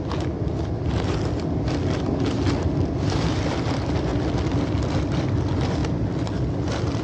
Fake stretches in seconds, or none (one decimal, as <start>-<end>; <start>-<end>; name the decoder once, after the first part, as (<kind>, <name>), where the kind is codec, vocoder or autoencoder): none